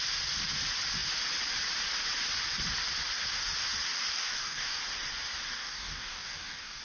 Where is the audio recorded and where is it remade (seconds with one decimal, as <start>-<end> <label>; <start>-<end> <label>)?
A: 0.0-4.1 recorded; 4.1-4.8 remade; 4.8-5.5 recorded; 5.5-6.8 remade